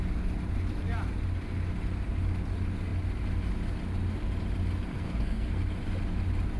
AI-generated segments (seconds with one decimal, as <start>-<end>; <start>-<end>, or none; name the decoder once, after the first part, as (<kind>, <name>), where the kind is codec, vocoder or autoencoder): 4.9-5.6 (codec, SNAC)